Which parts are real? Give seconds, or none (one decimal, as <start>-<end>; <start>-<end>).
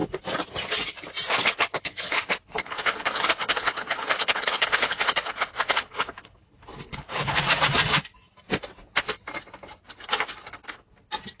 0.0-1.3; 6.5-6.9; 7.4-11.4